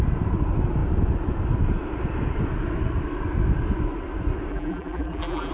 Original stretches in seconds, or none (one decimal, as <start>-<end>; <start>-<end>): 0.0-4.5